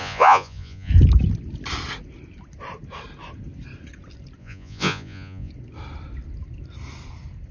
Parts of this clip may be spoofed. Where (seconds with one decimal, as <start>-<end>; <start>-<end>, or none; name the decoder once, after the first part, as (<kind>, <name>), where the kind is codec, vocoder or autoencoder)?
0.0-0.9 (vocoder, Vocos); 4.4-5.5